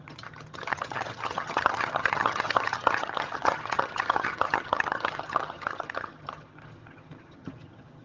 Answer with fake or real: fake